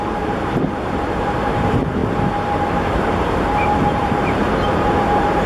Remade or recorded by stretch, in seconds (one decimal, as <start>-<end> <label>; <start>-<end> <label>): 0.0-2.0 remade; 2.0-2.7 recorded; 2.7-5.5 remade